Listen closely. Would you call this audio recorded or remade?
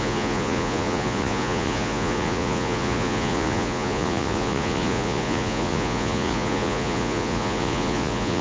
remade